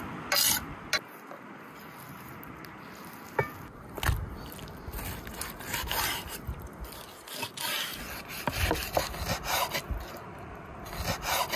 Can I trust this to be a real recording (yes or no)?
yes